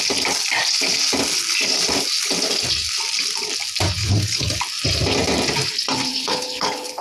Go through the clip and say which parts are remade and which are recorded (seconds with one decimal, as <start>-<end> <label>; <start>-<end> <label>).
0.0-4.0 recorded; 4.0-4.6 remade; 4.6-6.1 recorded; 6.1-7.0 remade